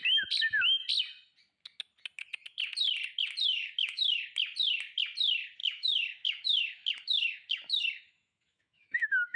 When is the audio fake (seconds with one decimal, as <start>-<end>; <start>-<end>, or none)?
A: 3.5-4.2; 5.6-9.4